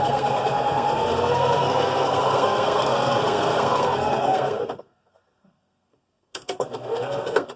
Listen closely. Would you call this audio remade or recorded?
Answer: remade